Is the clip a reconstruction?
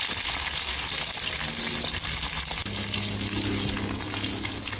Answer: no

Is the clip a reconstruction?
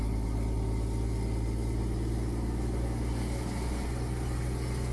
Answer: no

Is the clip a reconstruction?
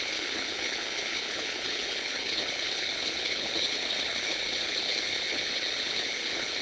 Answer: yes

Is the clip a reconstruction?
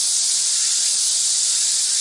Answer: no